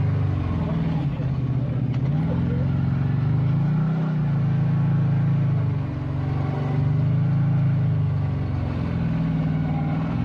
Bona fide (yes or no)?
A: yes